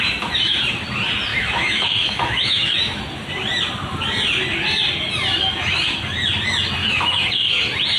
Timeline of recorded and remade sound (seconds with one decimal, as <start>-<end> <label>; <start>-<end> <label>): 0.0-1.3 recorded; 1.3-3.0 remade; 3.0-6.8 recorded; 6.8-7.5 remade; 7.5-8.0 recorded